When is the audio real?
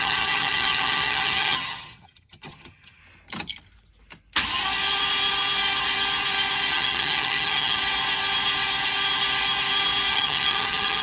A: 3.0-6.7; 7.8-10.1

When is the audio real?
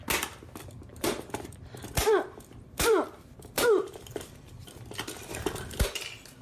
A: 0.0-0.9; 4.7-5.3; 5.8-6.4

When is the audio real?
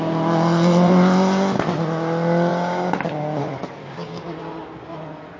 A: 0.0-2.5; 3.4-3.8; 4.4-5.4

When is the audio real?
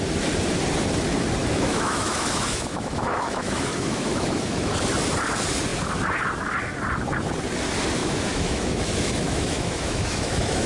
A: 0.0-1.4; 4.7-8.0